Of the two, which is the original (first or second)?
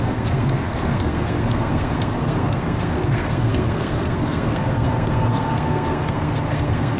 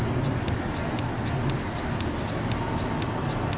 second